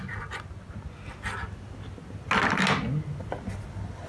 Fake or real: real